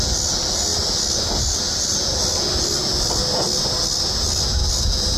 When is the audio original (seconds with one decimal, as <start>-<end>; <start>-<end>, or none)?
0.0-5.2